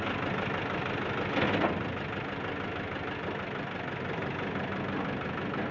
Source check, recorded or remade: recorded